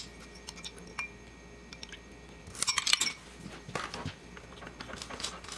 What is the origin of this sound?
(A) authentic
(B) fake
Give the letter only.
A